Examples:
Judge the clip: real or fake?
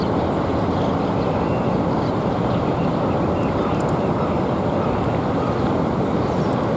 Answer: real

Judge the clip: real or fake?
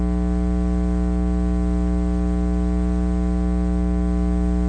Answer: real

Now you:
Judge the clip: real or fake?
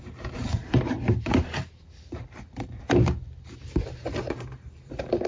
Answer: fake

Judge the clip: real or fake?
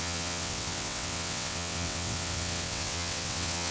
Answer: fake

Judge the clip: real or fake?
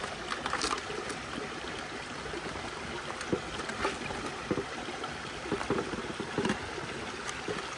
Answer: real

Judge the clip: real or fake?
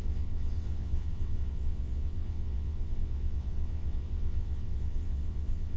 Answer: fake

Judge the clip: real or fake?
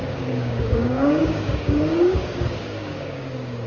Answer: fake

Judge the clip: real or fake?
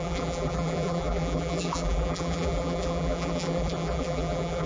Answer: fake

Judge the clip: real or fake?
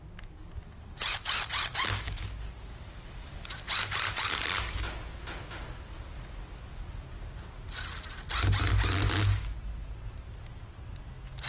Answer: real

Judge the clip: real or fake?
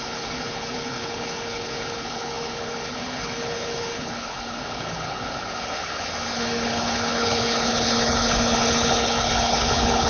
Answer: fake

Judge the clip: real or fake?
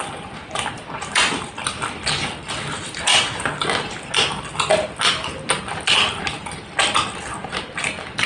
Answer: real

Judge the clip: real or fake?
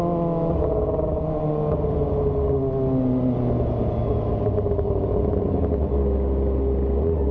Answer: real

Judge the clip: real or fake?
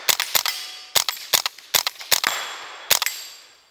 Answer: real